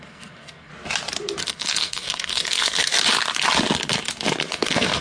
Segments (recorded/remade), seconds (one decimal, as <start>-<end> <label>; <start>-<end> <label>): 0.0-0.7 remade; 0.7-1.4 recorded; 1.4-2.9 remade; 2.9-4.5 recorded; 4.5-5.0 remade